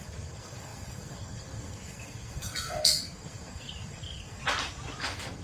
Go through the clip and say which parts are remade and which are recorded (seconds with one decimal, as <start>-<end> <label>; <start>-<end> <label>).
0.0-4.4 remade; 4.4-5.0 recorded; 5.0-5.4 remade